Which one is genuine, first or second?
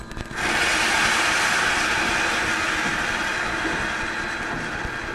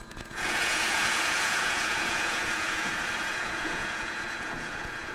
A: first